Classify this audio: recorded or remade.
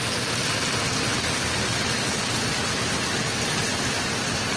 recorded